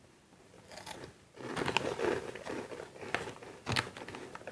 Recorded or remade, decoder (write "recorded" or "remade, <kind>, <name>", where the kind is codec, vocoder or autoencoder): recorded